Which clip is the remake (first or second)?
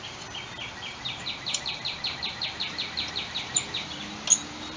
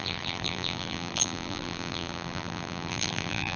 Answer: second